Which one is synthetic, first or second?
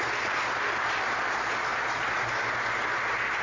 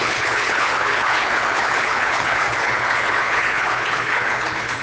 second